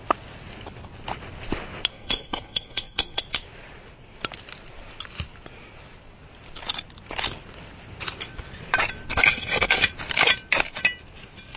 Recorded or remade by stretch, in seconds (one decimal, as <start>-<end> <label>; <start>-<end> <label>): 0.0-1.9 recorded; 1.9-3.2 remade; 3.2-9.1 recorded; 9.1-9.8 remade; 9.8-11.6 recorded